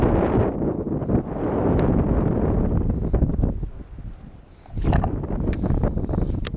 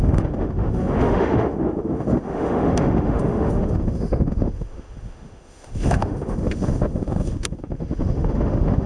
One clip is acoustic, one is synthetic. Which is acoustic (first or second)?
first